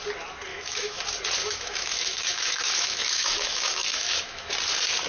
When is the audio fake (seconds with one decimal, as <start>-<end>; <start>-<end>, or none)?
0.5-1.0; 1.4-4.5